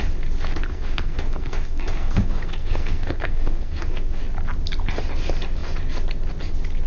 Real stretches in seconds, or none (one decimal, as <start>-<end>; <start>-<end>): 0.0-0.7; 4.2-6.9

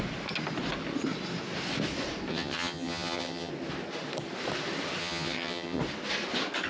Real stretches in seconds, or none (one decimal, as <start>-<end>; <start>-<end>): 0.0-2.3; 3.5-5.0; 5.8-6.7

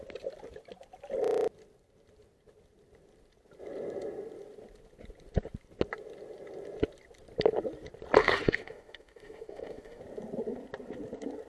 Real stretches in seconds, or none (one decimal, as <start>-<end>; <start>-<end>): 0.0-8.2; 10.0-11.5

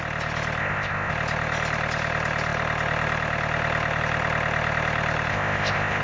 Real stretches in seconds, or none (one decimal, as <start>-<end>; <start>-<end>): 0.0-0.6; 1.1-5.3

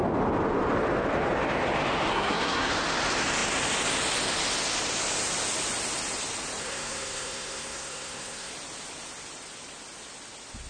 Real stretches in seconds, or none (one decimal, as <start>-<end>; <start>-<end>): 0.0-2.1; 2.7-6.6; 8.5-10.7

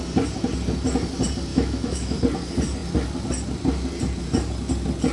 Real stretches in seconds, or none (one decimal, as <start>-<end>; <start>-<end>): 0.0-1.5; 2.2-5.1